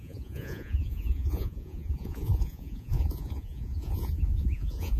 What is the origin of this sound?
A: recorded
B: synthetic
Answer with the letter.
B